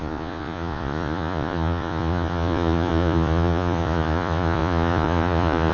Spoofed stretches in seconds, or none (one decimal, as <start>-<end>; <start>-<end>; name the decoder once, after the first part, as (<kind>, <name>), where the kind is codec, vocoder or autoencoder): 0.0-5.7 (vocoder, Vocos)